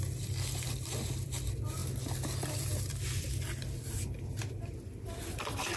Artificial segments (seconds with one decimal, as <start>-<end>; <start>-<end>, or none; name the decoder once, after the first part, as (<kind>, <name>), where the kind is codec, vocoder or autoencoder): 0.0-1.8 (vocoder, BigVGAN v2); 2.4-5.8